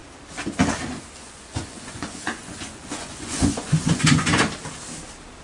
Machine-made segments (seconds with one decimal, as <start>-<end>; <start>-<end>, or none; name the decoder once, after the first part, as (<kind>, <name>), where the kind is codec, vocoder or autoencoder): 1.2-4.4 (vocoder, Vocos)